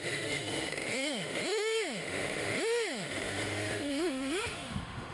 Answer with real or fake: fake